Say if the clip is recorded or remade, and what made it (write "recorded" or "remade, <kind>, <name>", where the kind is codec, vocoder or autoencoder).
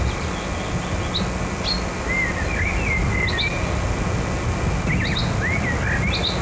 recorded